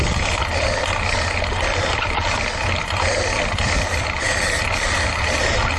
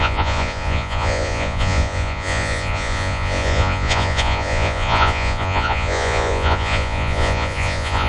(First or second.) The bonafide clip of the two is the first